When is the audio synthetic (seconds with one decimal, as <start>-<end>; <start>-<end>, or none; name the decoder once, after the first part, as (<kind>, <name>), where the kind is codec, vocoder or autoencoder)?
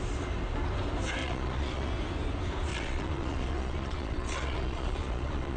1.2-1.9 (vocoder, Vocos); 2.7-5.6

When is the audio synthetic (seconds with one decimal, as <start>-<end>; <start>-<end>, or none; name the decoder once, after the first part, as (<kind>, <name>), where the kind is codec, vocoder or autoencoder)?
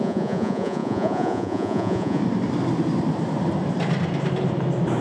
0.0-2.2 (vocoder, Vocos)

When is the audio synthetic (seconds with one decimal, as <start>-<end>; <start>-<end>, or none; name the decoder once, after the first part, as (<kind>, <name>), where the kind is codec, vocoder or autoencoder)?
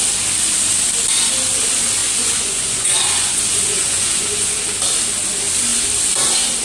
2.0-4.6 (vocoder, Vocos)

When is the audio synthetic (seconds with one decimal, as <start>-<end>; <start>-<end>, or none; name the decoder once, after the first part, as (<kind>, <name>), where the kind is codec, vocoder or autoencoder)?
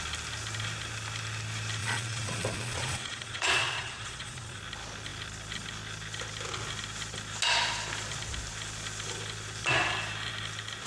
1.8-4.6 (vocoder, Vocos)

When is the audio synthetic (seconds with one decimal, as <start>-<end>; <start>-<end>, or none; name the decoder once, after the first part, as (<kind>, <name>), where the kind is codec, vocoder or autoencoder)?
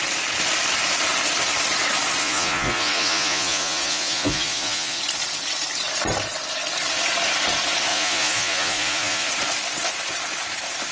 2.2-5.0 (vocoder, Vocos); 7.9-9.3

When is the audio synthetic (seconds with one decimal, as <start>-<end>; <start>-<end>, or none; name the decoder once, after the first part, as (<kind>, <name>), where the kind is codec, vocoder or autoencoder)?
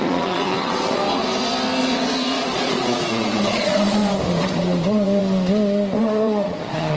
0.0-1.0 (vocoder, Vocos); 1.8-4.0; 4.5-5.2; 6.0-7.0